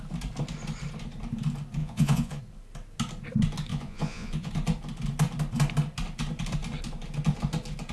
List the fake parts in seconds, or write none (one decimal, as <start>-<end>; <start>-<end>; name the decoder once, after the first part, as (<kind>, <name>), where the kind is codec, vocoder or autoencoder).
1.8-2.4 (vocoder, Vocos); 3.7-4.5